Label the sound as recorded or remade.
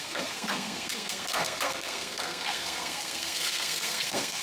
remade